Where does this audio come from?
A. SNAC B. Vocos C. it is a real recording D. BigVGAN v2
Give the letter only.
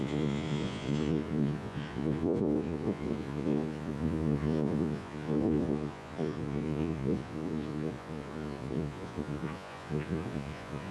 B